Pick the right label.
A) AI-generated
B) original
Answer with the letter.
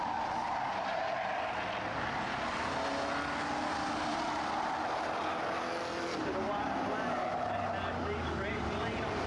B